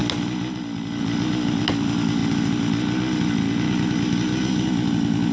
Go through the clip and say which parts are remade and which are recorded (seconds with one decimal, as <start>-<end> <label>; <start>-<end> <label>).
0.0-5.3 recorded

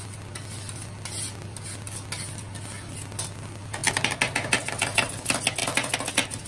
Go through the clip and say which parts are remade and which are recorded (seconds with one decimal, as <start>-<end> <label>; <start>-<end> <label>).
0.0-6.5 recorded

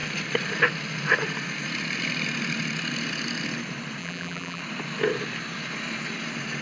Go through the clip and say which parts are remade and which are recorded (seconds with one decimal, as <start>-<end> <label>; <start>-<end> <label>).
0.0-4.0 recorded; 4.0-4.6 remade; 4.6-6.6 recorded

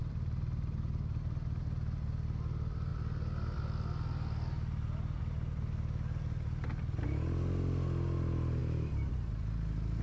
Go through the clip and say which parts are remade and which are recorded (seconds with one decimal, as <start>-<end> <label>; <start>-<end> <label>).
0.0-1.6 remade; 1.6-8.6 recorded; 8.6-9.1 remade; 9.1-10.0 recorded

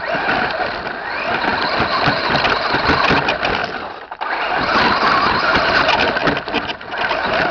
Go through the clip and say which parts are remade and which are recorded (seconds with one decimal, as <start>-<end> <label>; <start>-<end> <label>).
0.0-7.5 recorded

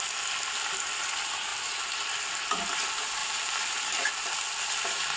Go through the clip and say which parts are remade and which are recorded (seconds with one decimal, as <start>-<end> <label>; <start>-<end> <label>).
0.0-3.2 recorded; 3.2-4.1 remade; 4.1-5.2 recorded

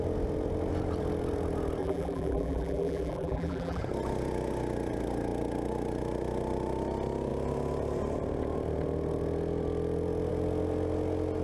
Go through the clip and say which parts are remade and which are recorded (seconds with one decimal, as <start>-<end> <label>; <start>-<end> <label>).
0.0-1.8 recorded; 1.8-3.8 remade; 3.8-11.4 recorded